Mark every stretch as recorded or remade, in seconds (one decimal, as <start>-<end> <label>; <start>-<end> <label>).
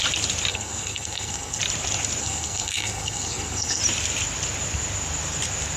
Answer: 0.0-0.5 recorded; 0.5-1.6 remade; 1.6-2.2 recorded; 2.2-3.8 remade; 3.8-5.8 recorded